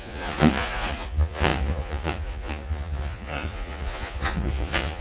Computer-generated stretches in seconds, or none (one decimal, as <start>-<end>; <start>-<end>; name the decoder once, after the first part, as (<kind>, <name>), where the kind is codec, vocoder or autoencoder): 0.0-5.0 (vocoder, Vocos)